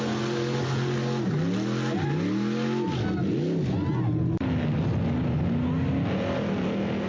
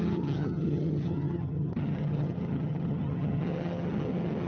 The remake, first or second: second